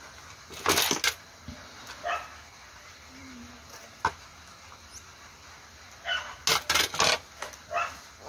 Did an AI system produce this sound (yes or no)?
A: no